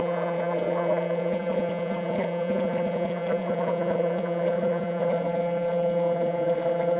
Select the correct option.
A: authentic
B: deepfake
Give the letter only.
B